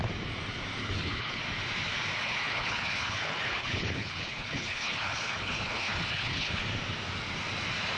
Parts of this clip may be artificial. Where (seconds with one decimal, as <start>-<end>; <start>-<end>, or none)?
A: 0.8-1.4; 2.2-6.6